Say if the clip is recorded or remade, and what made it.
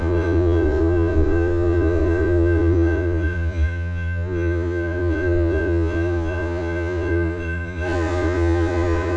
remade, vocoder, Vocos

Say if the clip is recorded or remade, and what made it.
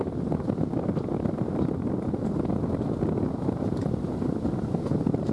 recorded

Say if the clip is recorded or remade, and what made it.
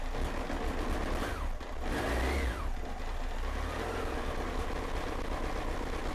recorded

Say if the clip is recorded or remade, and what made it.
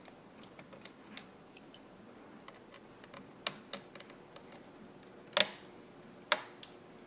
recorded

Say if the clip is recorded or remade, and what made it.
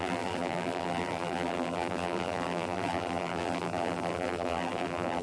remade, vocoder, BigVGAN v2